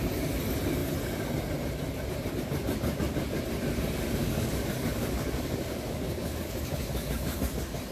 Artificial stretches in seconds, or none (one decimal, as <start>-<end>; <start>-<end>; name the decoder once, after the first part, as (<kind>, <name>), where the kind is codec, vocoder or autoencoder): 4.2-7.4 (codec, DAC)